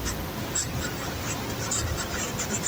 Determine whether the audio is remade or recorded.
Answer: recorded